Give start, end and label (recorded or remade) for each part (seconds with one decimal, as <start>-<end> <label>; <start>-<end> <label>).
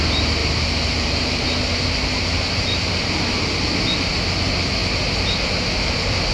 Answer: 0.0-0.4 recorded; 0.4-2.9 remade; 2.9-6.3 recorded